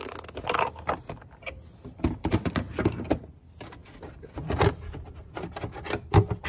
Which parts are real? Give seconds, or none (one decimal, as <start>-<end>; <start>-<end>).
0.0-6.5